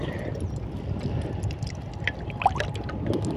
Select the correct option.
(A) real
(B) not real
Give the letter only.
A